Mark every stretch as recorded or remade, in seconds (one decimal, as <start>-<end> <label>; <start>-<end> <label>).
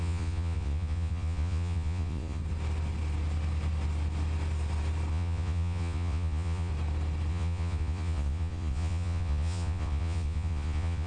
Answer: 0.0-2.4 remade; 2.4-5.1 recorded; 5.1-6.7 remade; 6.7-7.3 recorded; 7.3-11.1 remade